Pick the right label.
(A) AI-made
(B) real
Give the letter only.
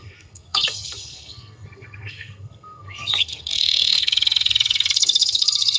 A